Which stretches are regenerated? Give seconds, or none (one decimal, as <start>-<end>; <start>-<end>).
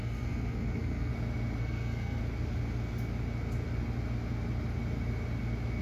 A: 0.0-1.1; 1.6-2.2